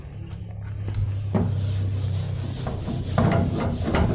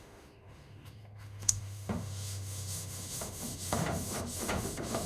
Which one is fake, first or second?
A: second